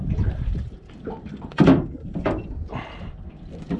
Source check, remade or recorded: remade